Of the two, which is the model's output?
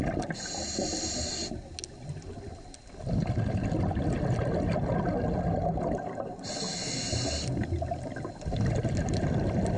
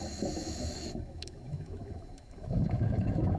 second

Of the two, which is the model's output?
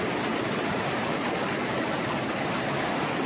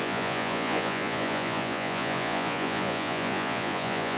second